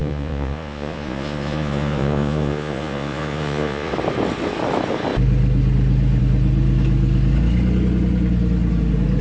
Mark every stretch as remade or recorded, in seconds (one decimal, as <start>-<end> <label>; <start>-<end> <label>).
0.0-3.9 remade; 3.9-9.2 recorded